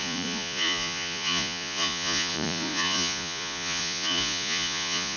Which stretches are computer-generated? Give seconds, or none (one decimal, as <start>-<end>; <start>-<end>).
0.0-5.2